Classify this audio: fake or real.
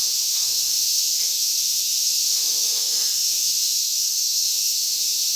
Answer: fake